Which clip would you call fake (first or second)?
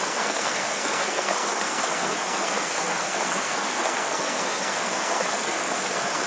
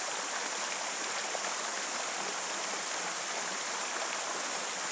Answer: first